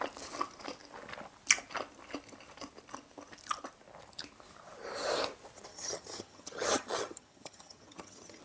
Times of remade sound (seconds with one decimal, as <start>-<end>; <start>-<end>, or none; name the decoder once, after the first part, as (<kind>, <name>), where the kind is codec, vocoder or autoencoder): 5.7-8.4 (vocoder, HiFi-GAN)